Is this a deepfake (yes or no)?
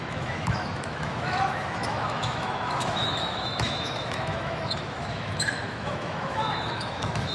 yes